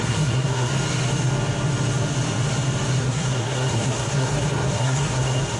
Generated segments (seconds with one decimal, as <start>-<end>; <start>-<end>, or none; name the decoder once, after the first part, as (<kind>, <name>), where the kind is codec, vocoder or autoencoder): 0.0-0.7 (codec, SNAC); 3.0-5.6